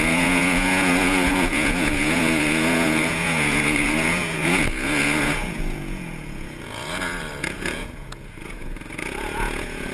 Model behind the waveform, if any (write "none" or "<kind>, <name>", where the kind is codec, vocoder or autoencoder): vocoder, Vocos